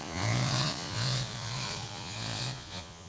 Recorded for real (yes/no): no